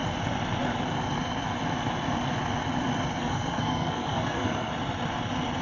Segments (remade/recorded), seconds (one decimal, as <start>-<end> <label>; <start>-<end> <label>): 0.0-3.2 recorded; 3.2-4.7 remade; 4.7-5.6 recorded